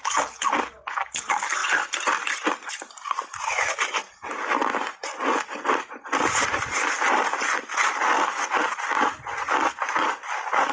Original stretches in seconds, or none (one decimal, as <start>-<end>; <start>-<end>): 0.0-10.7